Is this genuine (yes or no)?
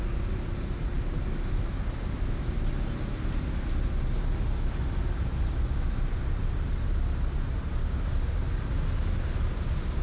yes